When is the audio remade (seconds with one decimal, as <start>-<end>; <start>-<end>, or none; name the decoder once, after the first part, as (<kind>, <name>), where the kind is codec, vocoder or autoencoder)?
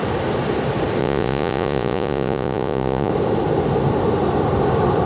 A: 1.0-3.1 (vocoder, Vocos)